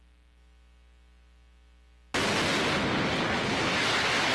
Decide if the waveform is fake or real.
real